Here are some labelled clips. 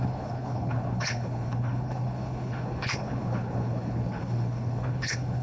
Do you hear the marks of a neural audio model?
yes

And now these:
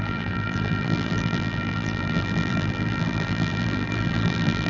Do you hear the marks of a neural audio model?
yes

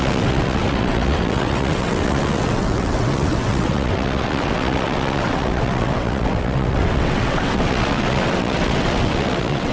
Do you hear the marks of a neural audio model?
yes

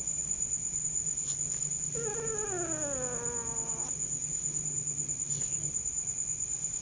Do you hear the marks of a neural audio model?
no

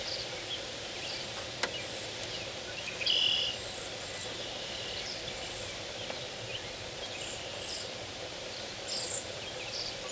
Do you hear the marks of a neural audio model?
yes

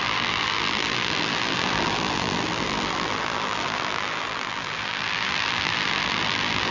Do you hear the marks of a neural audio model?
yes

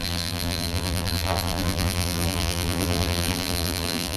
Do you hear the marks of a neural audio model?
yes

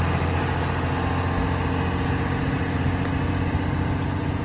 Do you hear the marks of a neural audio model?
no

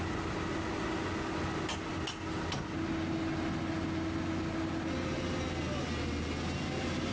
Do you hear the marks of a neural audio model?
no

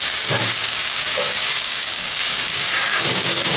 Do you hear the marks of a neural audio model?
yes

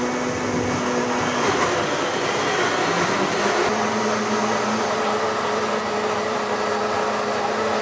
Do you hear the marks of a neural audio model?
no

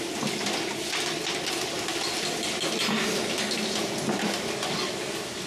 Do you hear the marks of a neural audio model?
no